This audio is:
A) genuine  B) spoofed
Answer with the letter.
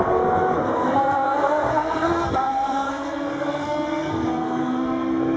B